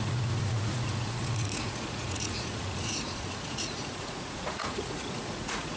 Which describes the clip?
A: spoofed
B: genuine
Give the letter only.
A